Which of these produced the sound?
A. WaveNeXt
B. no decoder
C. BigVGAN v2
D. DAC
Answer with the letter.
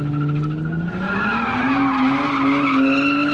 B